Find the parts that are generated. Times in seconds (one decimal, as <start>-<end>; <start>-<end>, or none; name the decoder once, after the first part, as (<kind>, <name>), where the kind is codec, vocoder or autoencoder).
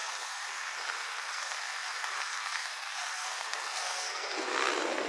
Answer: 0.0-5.1 (codec, SNAC)